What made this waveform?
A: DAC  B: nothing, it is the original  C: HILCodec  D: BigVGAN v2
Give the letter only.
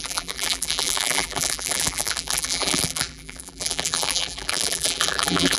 D